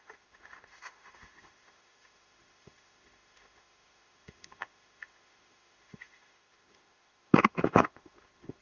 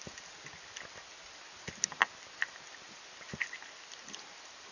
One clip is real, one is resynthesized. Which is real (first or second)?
second